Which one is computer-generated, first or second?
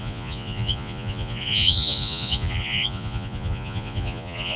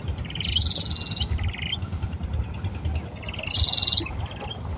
first